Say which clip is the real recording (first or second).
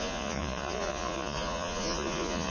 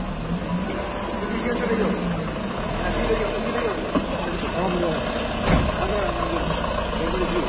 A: second